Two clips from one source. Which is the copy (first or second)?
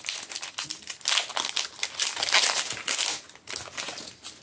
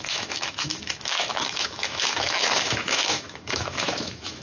second